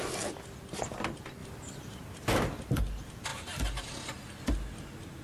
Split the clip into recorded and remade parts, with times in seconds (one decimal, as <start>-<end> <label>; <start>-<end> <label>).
0.0-5.2 recorded